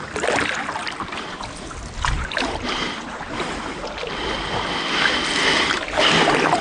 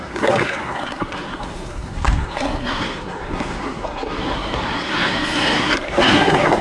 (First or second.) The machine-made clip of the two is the second